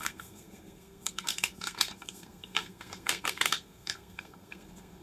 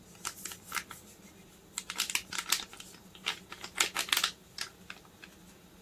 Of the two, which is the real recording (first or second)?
second